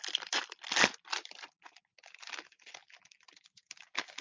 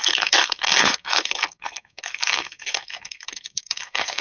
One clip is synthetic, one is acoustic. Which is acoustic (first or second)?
first